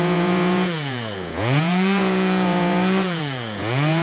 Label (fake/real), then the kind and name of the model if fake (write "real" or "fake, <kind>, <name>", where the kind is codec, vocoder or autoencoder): fake, vocoder, Vocos